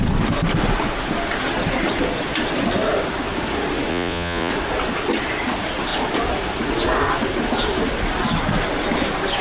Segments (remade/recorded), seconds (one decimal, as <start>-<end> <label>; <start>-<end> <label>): 0.0-3.9 recorded; 3.9-4.5 remade; 4.5-9.4 recorded